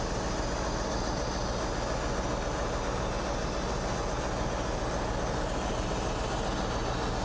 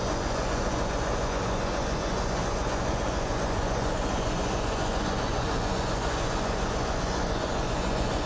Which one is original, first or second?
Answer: first